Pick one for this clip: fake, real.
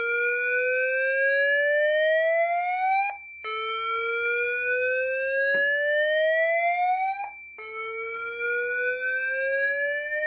real